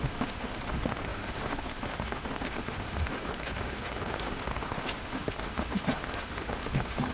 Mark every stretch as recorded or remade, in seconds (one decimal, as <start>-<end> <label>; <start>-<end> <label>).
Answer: 0.0-7.1 remade